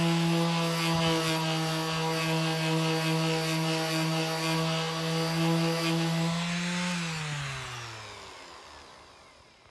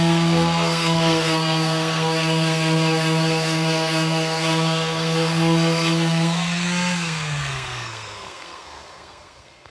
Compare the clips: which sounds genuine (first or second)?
first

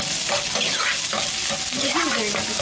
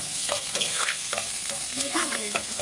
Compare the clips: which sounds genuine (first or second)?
first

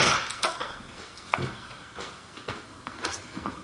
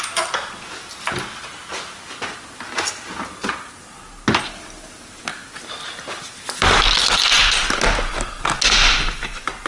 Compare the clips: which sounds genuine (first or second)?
second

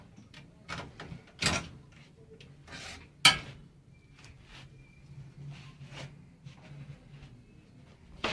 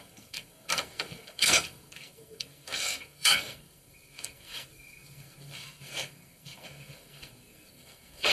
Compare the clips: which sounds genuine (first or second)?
first